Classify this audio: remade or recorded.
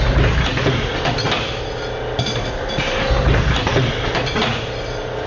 recorded